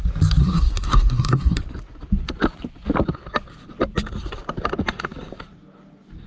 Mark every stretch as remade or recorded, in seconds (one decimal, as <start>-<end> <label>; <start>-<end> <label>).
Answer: 0.0-0.4 recorded; 0.4-1.6 remade; 1.6-6.3 recorded